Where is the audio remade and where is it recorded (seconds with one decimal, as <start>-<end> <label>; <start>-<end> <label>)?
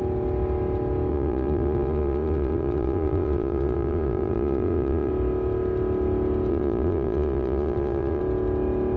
0.0-1.1 recorded; 1.1-5.1 remade; 5.1-6.5 recorded; 6.5-8.2 remade; 8.2-9.0 recorded